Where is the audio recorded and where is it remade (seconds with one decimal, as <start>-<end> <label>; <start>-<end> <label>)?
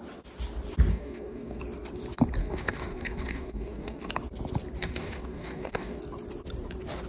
0.0-0.9 recorded; 0.9-1.6 remade; 1.6-2.4 recorded; 2.4-4.1 remade; 4.1-4.8 recorded; 4.8-6.0 remade; 6.0-7.1 recorded